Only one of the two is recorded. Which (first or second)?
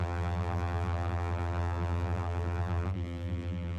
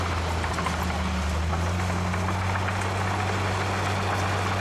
second